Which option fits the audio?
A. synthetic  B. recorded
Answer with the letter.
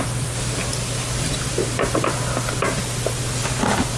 B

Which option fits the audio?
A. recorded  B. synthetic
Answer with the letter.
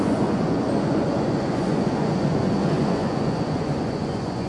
B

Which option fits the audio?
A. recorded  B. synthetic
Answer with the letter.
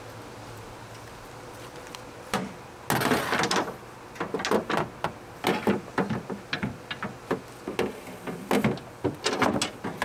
A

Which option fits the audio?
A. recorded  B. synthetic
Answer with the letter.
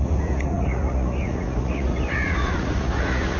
B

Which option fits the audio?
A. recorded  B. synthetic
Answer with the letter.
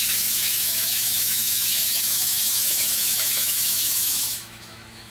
B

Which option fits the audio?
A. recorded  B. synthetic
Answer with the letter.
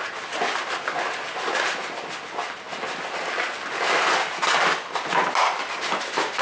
A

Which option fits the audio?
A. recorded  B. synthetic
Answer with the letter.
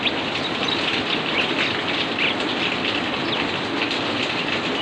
A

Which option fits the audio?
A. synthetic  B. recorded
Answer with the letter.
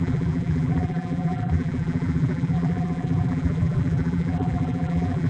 A